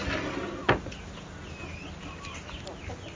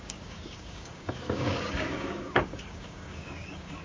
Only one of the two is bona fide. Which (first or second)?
first